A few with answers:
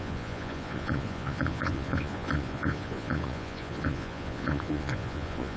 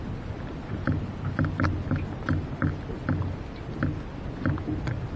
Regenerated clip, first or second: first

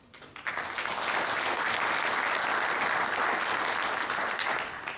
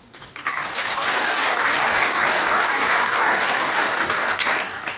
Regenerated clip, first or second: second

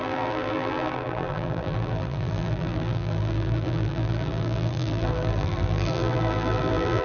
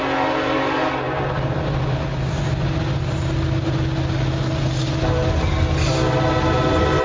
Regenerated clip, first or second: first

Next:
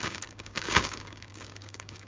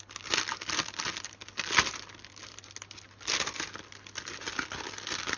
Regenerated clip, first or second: first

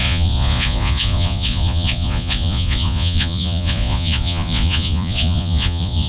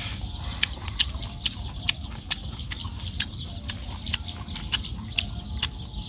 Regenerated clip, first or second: first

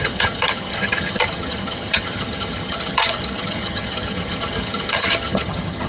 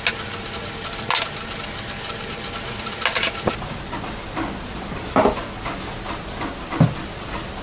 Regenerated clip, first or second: first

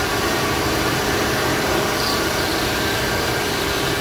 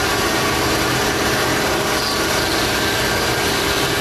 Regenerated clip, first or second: first